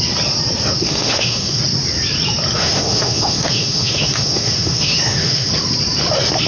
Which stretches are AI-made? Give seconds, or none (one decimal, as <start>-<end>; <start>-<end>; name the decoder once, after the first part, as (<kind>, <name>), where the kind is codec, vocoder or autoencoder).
0.8-1.6 (autoencoder, DAC-VAE); 2.6-5.5